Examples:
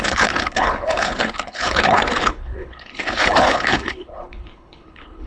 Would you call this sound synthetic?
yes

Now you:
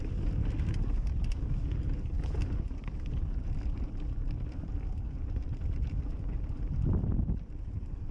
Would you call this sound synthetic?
no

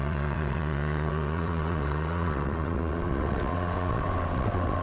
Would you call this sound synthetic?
yes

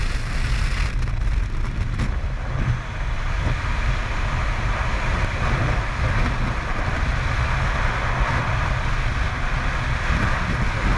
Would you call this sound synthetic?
no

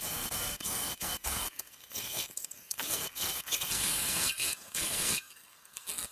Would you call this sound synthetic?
yes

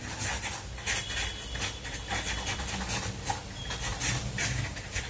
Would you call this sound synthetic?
no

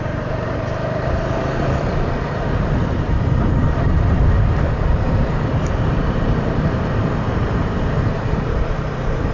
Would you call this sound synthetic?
yes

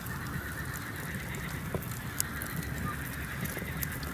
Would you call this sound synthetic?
no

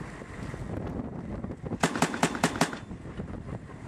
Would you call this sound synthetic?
no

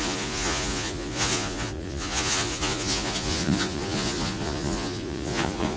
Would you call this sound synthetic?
yes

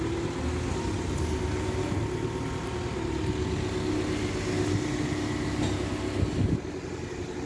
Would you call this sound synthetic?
no